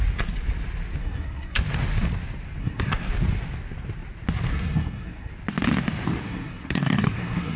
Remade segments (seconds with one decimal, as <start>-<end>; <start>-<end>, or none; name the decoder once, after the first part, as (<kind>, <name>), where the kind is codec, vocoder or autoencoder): 1.0-1.6 (codec, SNAC); 2.6-3.1; 4.5-5.3; 6.2-7.6